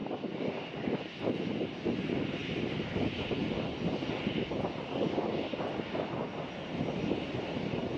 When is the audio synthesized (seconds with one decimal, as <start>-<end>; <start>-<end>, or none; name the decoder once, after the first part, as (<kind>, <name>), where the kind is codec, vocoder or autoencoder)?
none